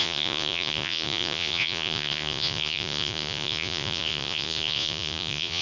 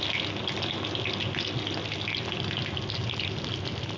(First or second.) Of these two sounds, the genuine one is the second